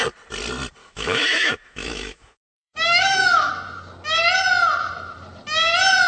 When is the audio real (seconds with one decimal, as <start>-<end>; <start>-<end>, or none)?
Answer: 0.0-0.8; 3.5-6.1

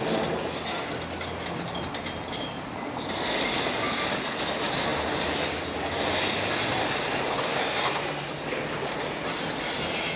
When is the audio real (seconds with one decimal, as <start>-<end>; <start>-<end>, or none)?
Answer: 0.0-10.2

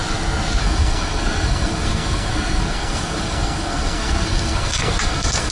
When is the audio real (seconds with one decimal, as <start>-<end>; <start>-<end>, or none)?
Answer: 0.0-0.6